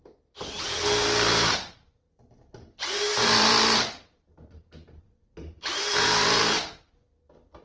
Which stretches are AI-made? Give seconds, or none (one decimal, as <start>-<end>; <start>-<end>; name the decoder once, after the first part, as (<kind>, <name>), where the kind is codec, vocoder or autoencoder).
1.3-2.1 (vocoder, BigVGAN v2); 3.1-6.4